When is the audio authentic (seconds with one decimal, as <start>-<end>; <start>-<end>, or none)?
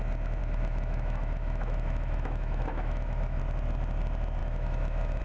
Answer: 0.0-0.4; 3.4-4.4